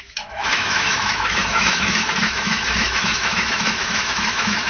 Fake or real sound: fake